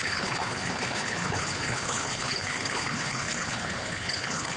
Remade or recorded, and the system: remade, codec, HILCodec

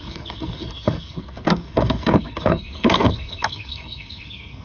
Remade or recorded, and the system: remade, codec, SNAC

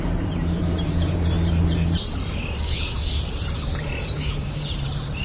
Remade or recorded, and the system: remade, vocoder, BigVGAN v2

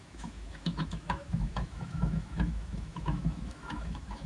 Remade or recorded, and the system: remade, autoencoder, DAC-VAE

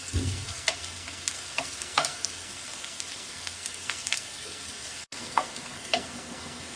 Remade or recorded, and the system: remade, codec, SNAC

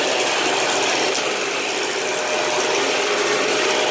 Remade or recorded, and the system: recorded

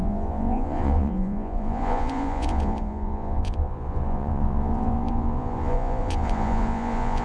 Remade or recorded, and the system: remade, vocoder, Vocos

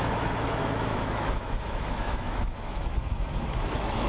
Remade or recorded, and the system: remade, autoencoder, DAC-VAE